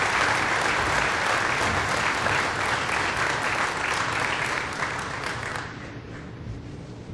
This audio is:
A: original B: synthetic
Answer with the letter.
A